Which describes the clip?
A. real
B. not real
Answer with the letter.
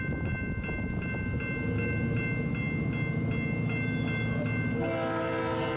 A